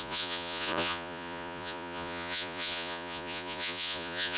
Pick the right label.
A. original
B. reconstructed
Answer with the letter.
B